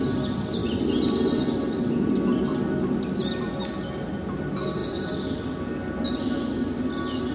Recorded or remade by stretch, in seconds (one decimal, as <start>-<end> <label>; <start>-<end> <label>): 0.0-3.5 recorded; 3.5-4.1 remade; 4.1-7.3 recorded